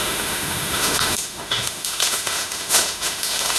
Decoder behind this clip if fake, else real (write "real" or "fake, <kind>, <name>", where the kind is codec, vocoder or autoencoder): fake, autoencoder, DAC-VAE